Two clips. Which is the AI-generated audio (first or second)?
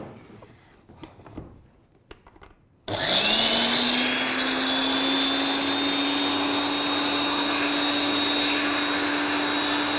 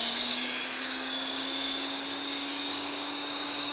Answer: second